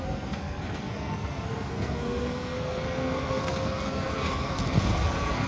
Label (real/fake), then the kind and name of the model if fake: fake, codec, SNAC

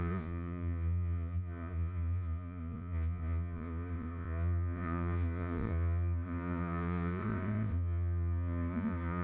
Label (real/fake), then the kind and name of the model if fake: fake, vocoder, Vocos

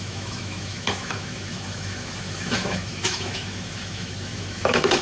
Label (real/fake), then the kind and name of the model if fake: fake, autoencoder, DAC-VAE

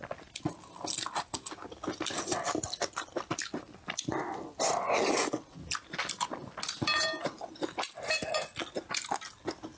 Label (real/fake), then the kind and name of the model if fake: real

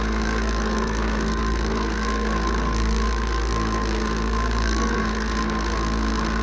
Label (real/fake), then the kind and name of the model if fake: fake, codec, SNAC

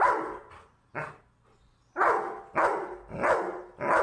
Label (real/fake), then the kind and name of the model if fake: real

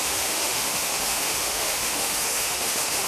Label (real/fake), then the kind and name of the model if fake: fake, autoencoder, DAC-VAE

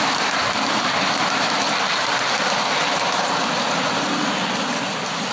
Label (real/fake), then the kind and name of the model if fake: real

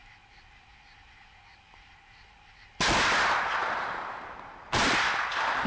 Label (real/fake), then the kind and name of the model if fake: real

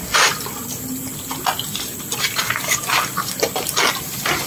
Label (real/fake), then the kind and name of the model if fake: real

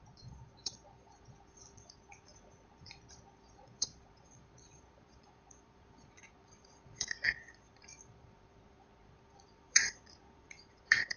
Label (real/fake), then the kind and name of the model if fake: fake, vocoder, Vocos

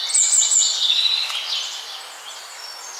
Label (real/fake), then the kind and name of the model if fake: real